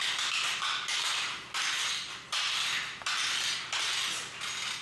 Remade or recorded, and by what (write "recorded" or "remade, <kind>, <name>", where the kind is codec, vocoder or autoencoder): recorded